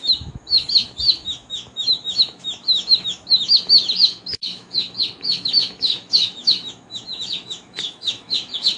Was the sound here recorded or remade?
remade